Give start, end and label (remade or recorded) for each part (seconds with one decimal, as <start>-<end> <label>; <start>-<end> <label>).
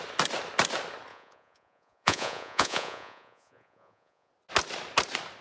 0.0-1.1 recorded; 1.1-4.3 remade; 4.3-5.4 recorded